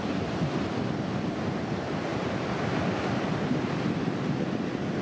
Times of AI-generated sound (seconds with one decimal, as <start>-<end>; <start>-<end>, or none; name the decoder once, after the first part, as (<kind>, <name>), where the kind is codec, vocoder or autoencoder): none